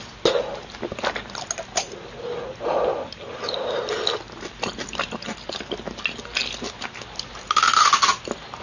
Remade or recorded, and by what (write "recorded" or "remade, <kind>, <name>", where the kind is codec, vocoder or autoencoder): recorded